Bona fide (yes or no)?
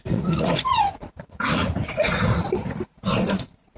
no